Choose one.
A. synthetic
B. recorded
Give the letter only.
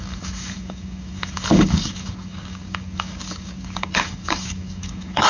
A